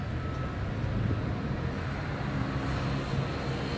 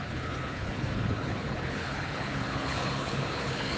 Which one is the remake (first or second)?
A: second